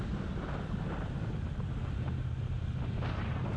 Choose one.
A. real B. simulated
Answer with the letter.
A